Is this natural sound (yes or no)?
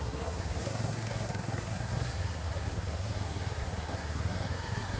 no